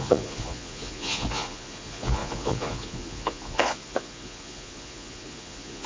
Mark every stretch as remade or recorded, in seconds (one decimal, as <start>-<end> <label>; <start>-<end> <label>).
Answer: 0.0-5.9 remade